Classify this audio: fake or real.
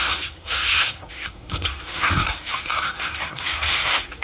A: fake